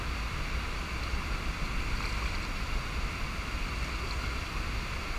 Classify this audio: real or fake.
real